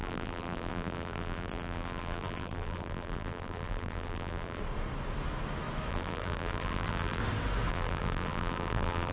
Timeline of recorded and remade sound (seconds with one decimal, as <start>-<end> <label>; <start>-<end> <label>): 0.0-4.6 remade; 4.6-5.9 recorded; 5.9-7.2 remade; 7.2-7.7 recorded; 7.7-9.1 remade